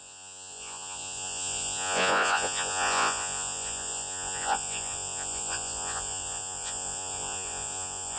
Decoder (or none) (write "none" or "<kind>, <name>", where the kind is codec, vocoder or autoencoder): vocoder, Vocos